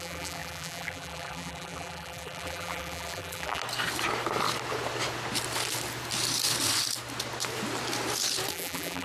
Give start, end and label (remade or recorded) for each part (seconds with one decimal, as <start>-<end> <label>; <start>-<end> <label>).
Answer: 0.0-3.6 remade; 3.6-8.5 recorded; 8.5-9.0 remade